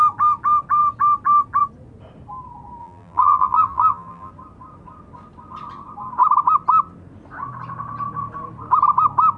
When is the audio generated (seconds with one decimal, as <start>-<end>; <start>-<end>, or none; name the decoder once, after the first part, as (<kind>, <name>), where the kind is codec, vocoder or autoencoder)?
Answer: 2.8-4.3 (vocoder, BigVGAN v2)